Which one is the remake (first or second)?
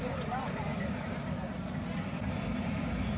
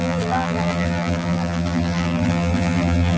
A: second